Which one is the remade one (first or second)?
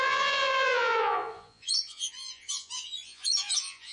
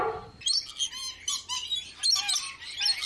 first